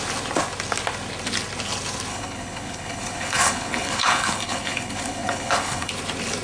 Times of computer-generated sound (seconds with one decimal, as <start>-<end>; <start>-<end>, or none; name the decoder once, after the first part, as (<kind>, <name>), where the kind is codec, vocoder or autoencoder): 2.1-5.9 (codec, HILCodec)

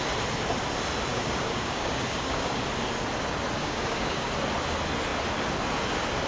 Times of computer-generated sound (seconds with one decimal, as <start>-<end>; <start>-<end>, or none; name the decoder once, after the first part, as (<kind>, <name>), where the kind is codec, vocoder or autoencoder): 1.1-2.6 (codec, DAC); 3.6-4.3